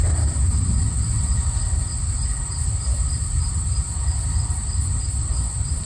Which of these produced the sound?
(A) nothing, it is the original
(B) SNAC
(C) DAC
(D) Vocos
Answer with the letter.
A